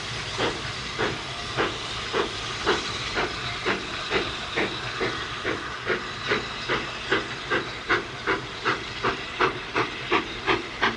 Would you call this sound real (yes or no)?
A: yes